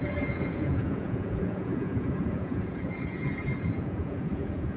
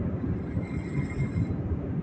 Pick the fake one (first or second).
first